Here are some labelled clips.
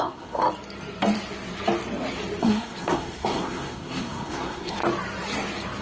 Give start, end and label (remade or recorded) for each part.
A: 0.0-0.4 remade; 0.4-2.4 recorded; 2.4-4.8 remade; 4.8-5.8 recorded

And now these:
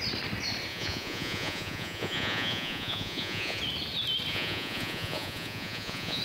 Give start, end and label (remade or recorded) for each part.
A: 0.0-0.7 recorded; 0.7-3.6 remade; 3.6-4.3 recorded; 4.3-6.2 remade

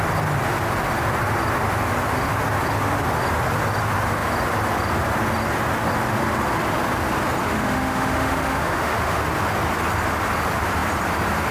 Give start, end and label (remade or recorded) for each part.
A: 0.0-7.4 recorded; 7.4-9.2 remade; 9.2-11.5 recorded

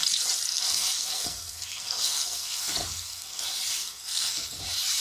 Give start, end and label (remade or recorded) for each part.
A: 0.0-0.5 recorded; 0.5-3.4 remade; 3.4-3.8 recorded; 3.8-4.6 remade; 4.6-5.0 recorded

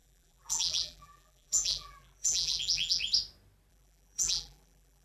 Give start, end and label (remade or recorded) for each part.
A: 0.0-3.0 remade; 3.0-3.7 recorded; 3.7-5.0 remade

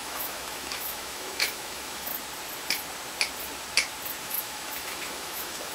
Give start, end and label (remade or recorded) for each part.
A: 0.0-2.1 remade; 2.1-4.2 recorded; 4.2-5.7 remade

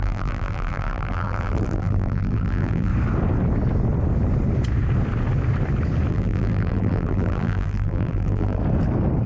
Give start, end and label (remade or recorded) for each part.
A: 0.0-2.9 remade; 2.9-6.1 recorded; 6.1-8.6 remade; 8.6-9.3 recorded